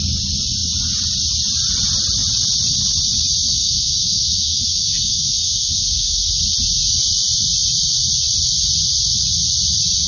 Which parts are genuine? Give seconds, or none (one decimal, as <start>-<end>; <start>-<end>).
0.0-3.5; 6.3-10.1